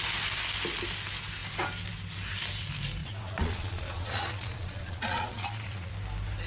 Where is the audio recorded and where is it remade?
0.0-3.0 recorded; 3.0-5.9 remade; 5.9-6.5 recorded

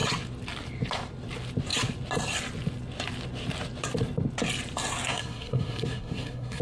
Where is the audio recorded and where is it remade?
0.0-5.1 recorded; 5.1-6.6 remade

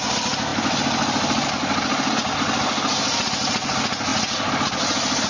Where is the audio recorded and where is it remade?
0.0-5.3 recorded

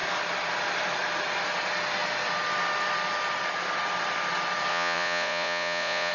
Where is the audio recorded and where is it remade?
0.0-4.7 recorded; 4.7-6.1 remade

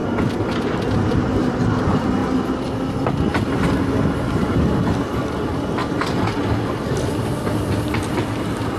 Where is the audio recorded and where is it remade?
0.0-8.8 recorded

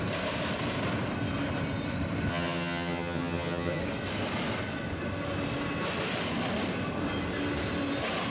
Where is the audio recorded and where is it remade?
0.0-2.3 recorded; 2.3-3.8 remade; 3.8-8.3 recorded

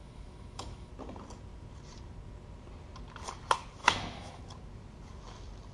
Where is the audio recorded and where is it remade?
0.0-0.9 remade; 0.9-3.8 recorded; 3.8-4.4 remade; 4.4-5.7 recorded